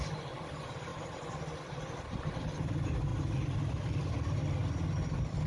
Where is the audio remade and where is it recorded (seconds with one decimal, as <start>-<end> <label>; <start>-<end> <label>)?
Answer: 0.0-3.1 remade; 3.1-3.7 recorded; 3.7-4.6 remade; 4.6-5.1 recorded; 5.1-5.5 remade